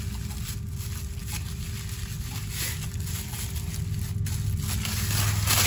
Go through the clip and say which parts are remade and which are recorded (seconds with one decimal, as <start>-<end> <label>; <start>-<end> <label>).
0.0-5.7 recorded